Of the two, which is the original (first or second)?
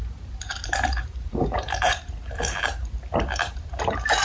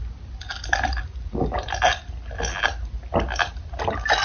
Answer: second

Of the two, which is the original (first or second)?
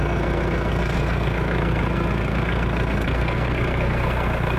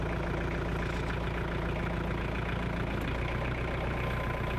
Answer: second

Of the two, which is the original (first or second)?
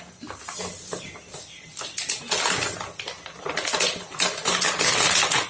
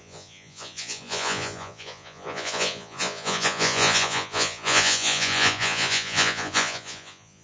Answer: first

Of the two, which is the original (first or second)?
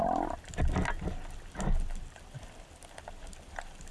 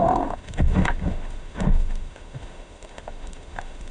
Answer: first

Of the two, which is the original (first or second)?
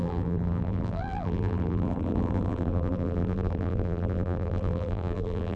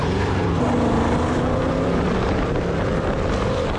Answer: second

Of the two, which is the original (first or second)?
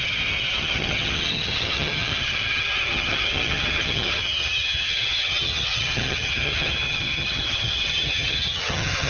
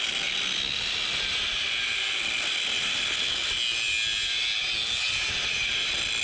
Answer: second